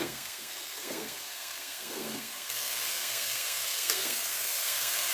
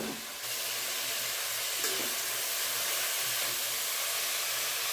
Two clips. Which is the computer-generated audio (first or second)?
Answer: first